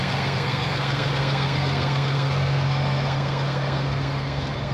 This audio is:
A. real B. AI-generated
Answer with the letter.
B